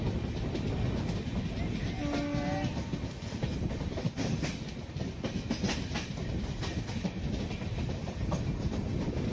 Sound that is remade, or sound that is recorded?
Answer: recorded